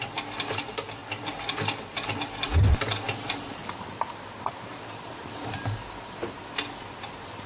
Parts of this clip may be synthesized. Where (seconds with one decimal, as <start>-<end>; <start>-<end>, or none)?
none